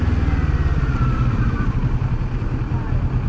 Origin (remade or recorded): recorded